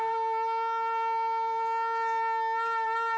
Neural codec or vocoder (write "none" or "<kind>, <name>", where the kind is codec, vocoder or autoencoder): none